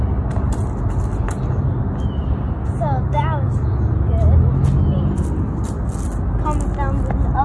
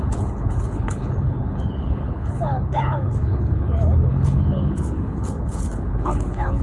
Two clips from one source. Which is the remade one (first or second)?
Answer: second